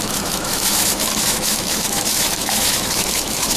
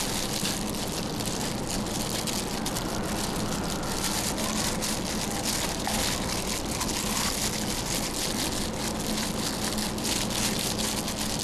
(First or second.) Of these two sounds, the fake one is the first